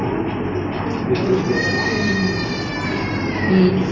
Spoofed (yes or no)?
no